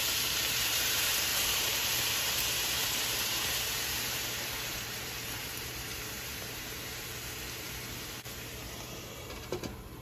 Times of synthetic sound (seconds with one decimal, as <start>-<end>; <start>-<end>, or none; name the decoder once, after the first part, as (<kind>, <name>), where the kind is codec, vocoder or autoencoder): 0.0-10.0 (vocoder, BigVGAN v2)